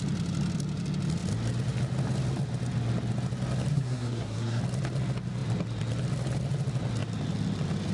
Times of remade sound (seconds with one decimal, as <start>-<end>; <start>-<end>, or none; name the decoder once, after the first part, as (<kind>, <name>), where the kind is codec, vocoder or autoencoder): 3.7-4.6 (codec, SNAC)